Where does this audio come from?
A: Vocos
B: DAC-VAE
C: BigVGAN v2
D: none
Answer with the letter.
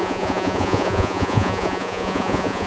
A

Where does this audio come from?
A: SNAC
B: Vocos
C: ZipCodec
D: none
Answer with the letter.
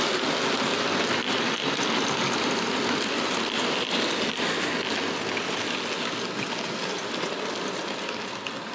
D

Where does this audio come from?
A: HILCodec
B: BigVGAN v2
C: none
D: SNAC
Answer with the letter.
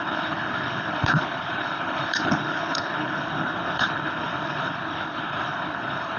A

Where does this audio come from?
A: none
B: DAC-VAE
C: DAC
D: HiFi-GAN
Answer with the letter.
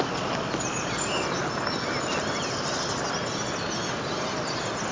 A